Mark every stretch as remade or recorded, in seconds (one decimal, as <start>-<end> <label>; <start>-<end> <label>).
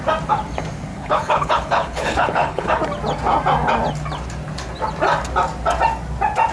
0.0-0.9 recorded; 0.9-2.8 remade; 2.8-6.5 recorded